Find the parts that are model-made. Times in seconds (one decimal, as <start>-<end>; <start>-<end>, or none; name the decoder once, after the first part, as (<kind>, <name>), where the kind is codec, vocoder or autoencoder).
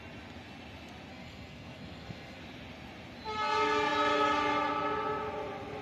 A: 1.1-2.4 (codec, SNAC)